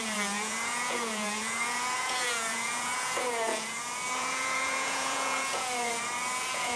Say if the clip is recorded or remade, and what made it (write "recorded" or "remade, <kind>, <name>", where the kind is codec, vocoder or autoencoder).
remade, vocoder, Vocos